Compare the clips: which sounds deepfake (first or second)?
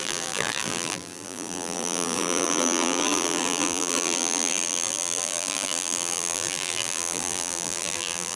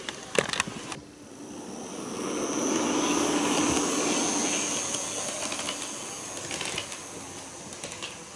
first